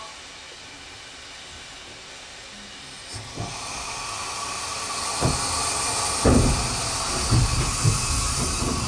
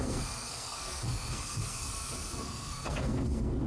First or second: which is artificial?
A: second